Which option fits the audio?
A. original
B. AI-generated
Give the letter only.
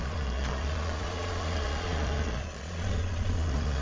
B